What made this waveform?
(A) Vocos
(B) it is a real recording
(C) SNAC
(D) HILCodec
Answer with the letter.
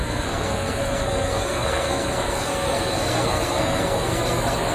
C